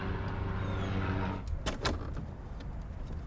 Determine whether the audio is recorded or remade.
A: recorded